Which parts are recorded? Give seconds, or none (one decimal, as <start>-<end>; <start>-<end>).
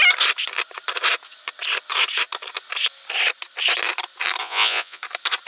0.0-4.4; 5.0-5.5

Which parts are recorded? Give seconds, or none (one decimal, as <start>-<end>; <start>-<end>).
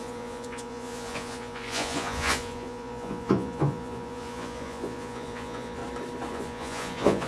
5.8-6.3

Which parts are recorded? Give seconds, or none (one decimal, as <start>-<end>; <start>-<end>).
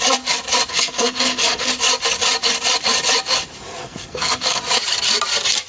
0.0-0.7; 1.7-3.8; 4.6-5.7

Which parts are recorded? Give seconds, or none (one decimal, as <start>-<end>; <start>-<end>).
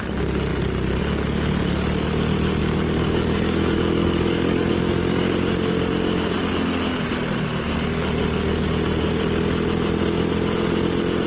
0.0-2.6; 4.7-11.3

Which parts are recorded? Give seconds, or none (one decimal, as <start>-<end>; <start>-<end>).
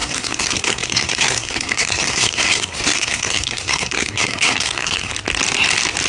5.1-6.1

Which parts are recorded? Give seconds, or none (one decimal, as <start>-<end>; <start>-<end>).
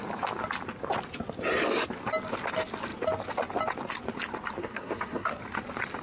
0.0-4.6; 5.4-6.0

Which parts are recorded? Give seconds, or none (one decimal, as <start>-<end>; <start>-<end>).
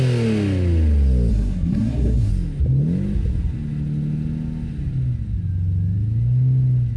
0.0-1.3; 2.3-7.0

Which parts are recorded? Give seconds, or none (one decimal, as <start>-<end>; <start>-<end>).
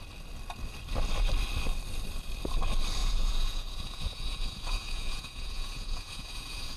0.0-3.0